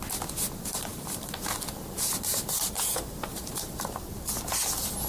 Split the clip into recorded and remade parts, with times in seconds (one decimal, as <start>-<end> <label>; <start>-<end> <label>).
0.0-0.9 recorded; 0.9-4.0 remade; 4.0-5.1 recorded